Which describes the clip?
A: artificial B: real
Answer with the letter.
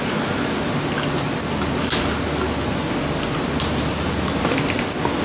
B